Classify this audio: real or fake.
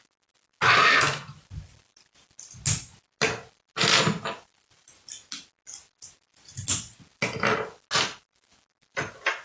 real